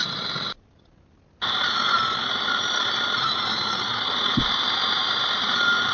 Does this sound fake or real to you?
real